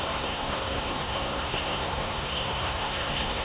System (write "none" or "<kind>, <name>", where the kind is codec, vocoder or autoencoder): codec, SNAC